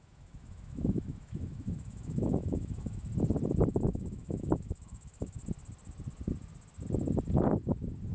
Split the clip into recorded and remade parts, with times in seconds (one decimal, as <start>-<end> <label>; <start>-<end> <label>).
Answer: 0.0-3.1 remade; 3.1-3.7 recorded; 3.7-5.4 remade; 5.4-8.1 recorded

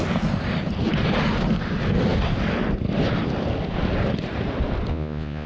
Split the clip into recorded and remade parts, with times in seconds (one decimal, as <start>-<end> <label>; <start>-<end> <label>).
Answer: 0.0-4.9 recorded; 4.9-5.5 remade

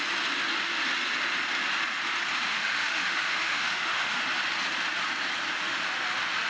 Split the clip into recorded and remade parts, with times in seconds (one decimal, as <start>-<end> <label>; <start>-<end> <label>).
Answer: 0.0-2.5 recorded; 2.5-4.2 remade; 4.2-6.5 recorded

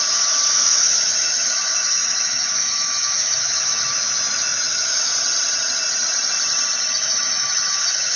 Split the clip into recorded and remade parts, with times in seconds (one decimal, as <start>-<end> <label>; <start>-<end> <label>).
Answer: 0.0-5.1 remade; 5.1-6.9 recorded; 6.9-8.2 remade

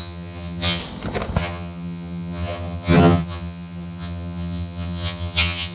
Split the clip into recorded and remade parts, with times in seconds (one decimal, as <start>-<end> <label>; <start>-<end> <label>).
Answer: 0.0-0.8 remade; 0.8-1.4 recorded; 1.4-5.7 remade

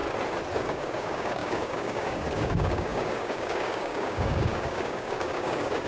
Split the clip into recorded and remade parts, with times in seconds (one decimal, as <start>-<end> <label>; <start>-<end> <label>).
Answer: 0.0-0.6 recorded; 0.6-5.9 remade